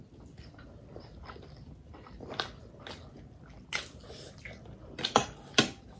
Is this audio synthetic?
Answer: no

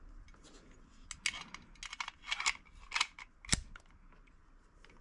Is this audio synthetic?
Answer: no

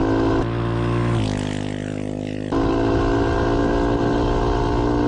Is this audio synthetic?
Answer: no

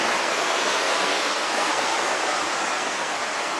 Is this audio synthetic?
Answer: yes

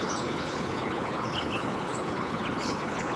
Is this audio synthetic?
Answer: yes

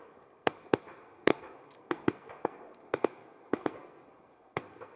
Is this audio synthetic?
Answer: yes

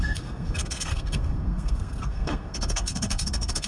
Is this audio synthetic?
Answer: yes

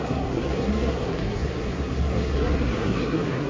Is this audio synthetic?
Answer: yes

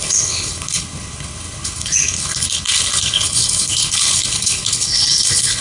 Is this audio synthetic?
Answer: yes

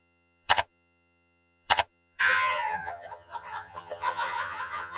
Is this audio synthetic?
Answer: yes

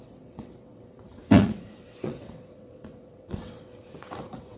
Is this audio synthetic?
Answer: yes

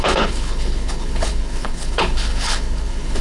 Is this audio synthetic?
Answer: yes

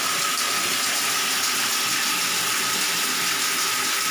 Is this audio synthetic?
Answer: no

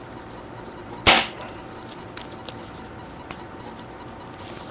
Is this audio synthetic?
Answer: no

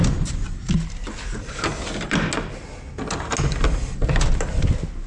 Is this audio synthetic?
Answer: no